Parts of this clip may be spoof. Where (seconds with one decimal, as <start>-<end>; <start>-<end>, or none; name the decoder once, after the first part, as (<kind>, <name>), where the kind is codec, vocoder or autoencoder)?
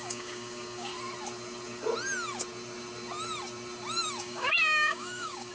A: 0.0-0.9 (codec, DAC); 4.2-5.5